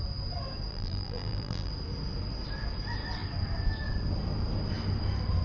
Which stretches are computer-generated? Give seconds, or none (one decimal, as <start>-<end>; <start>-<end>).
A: 0.7-1.7